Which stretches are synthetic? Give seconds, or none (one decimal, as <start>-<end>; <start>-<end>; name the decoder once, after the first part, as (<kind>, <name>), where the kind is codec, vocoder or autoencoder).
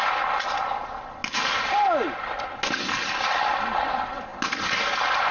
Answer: none